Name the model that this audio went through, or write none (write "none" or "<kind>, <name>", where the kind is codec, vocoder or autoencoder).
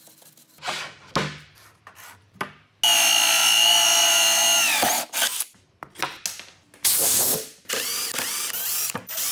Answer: none